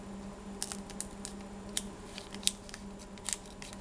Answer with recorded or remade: recorded